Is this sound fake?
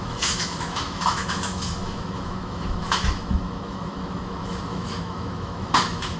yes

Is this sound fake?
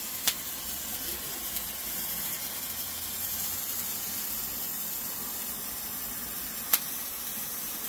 no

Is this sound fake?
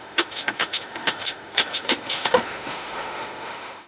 yes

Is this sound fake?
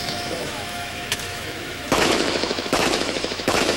yes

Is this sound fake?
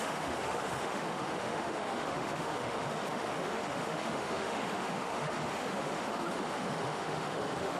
yes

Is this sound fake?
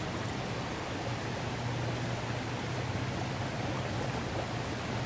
no